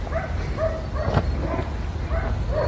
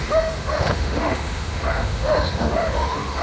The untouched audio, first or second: first